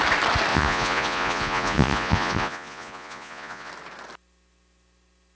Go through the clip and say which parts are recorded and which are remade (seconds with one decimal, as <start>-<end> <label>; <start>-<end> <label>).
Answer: 0.0-0.5 recorded; 0.5-3.7 remade; 3.7-5.4 recorded